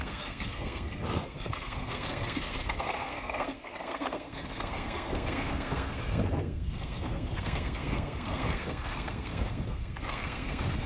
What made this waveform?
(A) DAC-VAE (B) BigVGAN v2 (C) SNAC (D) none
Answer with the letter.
C